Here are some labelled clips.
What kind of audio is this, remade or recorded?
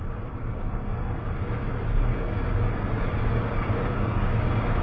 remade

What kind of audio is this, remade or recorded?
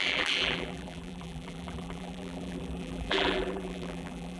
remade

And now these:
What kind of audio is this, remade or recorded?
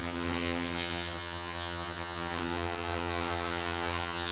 remade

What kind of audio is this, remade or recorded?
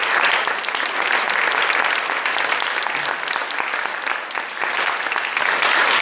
recorded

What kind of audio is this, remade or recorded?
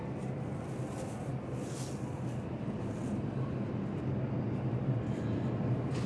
recorded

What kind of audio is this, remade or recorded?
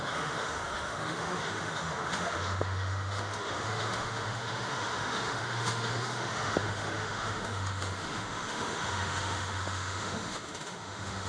remade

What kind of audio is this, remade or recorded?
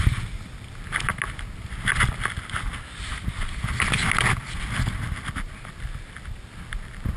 recorded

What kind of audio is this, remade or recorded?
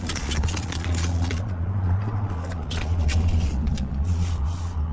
remade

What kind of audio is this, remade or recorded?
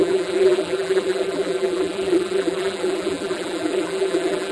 remade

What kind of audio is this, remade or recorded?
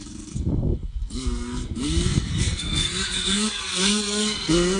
remade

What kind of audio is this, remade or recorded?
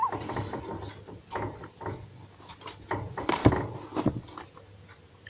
recorded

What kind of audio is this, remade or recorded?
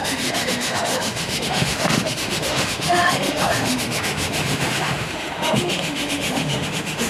remade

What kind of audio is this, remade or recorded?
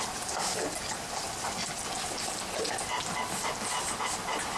recorded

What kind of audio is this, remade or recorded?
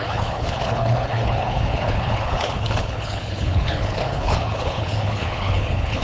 remade